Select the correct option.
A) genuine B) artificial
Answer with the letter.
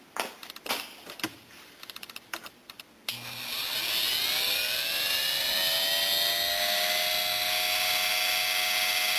A